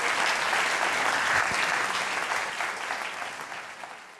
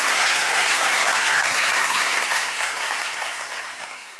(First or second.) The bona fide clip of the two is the first